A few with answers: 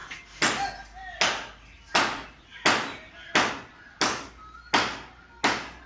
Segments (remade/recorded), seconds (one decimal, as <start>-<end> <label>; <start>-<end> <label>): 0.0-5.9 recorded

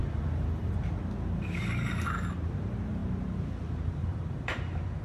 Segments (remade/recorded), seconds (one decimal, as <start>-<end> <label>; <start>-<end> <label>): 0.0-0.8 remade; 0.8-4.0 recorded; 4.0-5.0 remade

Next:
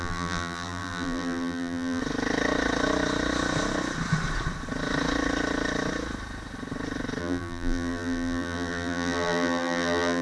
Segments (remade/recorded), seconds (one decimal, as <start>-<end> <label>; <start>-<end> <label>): 0.0-2.0 remade; 2.0-7.2 recorded; 7.2-10.2 remade